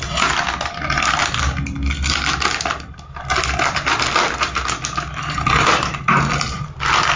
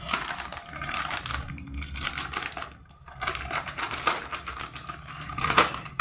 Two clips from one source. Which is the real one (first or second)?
first